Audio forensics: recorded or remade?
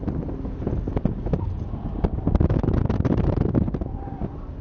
recorded